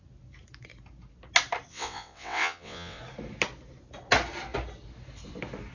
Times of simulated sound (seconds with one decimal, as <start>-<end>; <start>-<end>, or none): 1.7-3.0